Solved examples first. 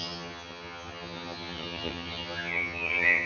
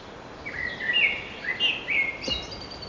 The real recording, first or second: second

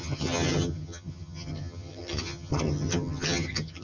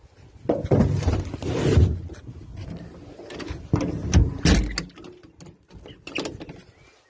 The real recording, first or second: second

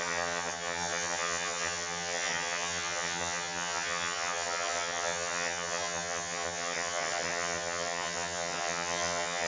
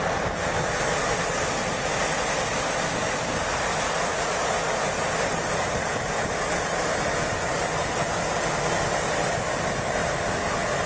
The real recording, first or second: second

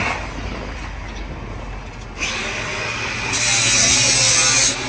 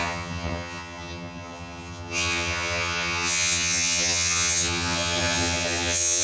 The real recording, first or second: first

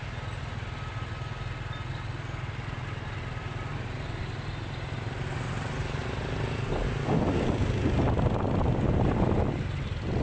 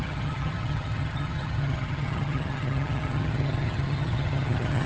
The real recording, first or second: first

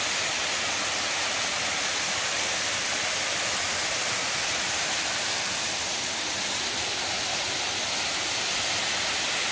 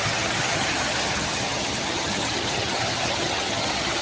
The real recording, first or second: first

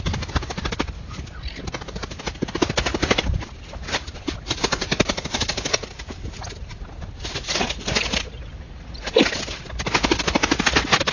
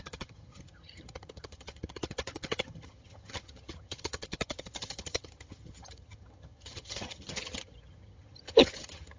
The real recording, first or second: first